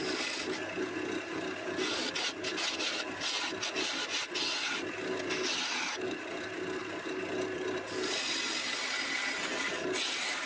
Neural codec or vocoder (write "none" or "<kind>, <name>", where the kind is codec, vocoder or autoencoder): none